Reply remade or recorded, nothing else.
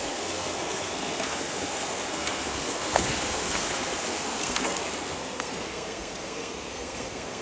remade